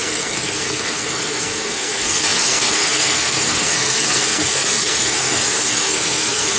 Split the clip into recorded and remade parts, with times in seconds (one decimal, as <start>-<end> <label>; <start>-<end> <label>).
0.0-6.6 remade